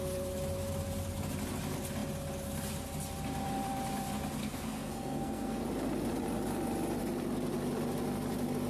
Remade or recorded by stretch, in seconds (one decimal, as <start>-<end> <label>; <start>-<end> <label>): 0.0-4.4 recorded; 4.4-5.6 remade; 5.6-8.7 recorded

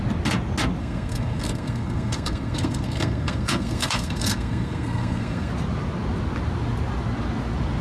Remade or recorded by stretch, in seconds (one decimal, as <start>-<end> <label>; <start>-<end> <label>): 0.0-0.8 recorded; 0.8-5.5 remade; 5.5-7.8 recorded